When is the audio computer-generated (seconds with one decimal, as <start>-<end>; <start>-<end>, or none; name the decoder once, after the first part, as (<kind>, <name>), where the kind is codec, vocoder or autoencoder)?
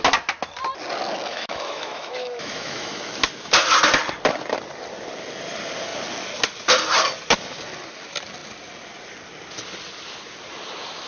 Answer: 1.3-3.0 (autoencoder, DAC-VAE)